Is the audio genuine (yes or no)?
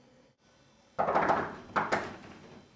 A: yes